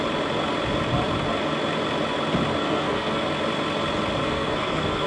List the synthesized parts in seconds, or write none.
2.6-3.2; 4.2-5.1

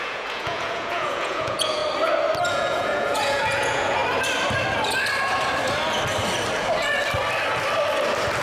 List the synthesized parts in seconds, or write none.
0.0-1.8; 2.5-4.0

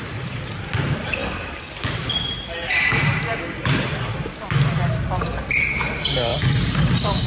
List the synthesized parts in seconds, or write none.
none